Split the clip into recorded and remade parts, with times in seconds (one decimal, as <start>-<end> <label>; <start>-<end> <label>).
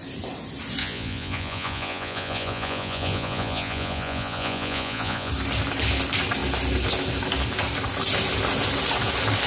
0.0-0.8 recorded; 0.8-5.3 remade; 5.3-9.5 recorded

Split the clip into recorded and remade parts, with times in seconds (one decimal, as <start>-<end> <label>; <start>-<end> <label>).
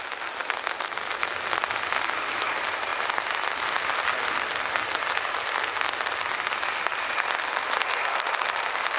0.0-9.0 recorded